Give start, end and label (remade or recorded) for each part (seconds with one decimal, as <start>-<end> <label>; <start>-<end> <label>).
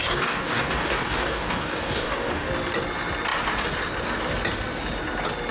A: 0.0-2.5 remade; 2.5-5.5 recorded